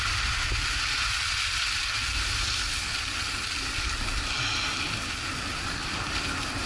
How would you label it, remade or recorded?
recorded